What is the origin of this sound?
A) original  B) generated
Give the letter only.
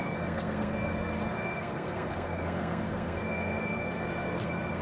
B